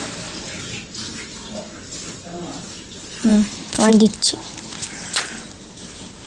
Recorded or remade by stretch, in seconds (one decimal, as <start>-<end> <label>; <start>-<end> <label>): 0.0-3.3 recorded; 3.3-3.9 remade; 3.9-6.3 recorded